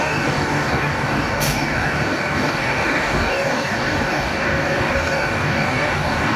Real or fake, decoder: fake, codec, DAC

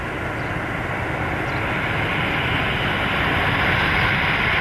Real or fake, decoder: fake, vocoder, BigVGAN v2